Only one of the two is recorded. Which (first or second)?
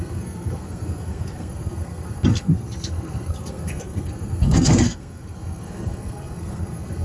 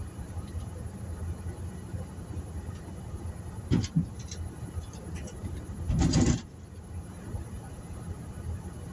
second